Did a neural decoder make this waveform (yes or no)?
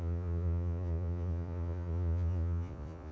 yes